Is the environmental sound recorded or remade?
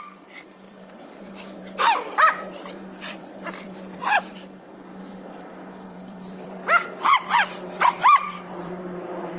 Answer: remade